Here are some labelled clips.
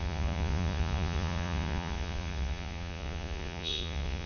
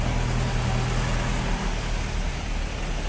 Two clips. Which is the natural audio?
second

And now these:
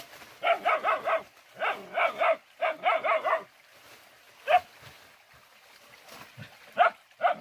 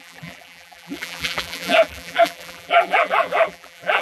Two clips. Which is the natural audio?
first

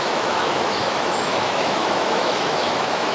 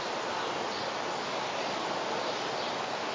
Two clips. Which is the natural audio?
second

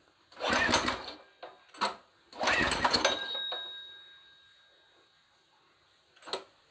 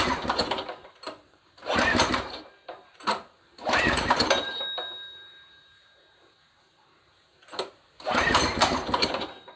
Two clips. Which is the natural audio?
first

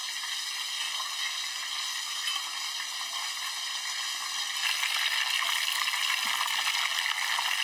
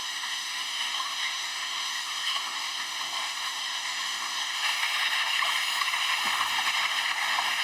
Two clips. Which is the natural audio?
first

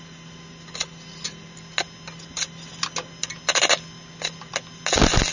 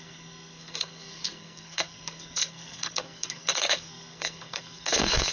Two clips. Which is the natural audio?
first